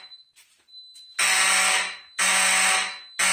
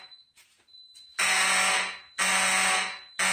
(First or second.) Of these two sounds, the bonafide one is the first